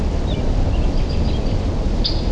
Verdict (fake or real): real